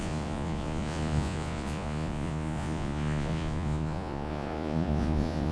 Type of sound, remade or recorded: remade